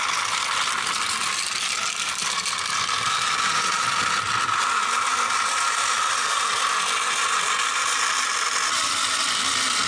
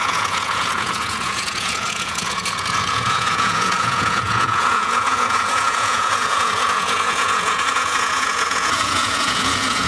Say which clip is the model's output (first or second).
second